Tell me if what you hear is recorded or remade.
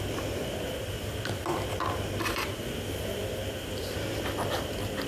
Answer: recorded